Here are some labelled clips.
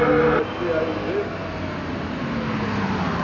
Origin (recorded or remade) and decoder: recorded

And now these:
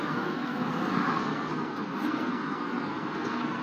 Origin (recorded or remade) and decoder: remade, codec, SNAC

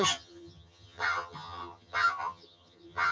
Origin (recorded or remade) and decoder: remade, vocoder, HiFi-GAN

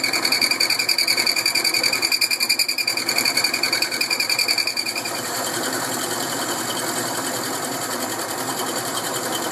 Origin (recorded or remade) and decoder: remade, vocoder, BigVGAN v2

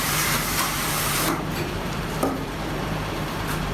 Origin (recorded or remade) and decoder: remade, vocoder, BigVGAN v2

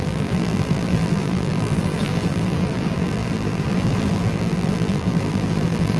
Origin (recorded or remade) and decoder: remade, vocoder, BigVGAN v2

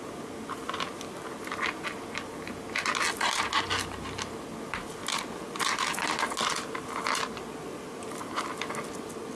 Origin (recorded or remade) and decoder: recorded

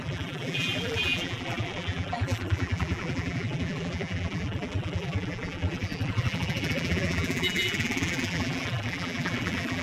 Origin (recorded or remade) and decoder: remade, vocoder, BigVGAN v2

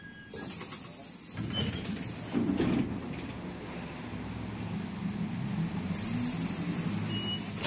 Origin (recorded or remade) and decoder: recorded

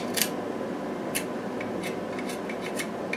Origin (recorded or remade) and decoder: recorded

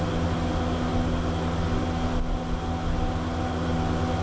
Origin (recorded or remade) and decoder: recorded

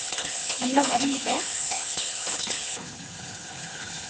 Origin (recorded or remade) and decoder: remade, codec, HILCodec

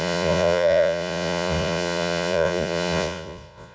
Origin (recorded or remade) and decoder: remade, vocoder, Vocos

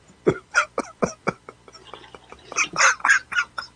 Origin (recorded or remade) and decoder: recorded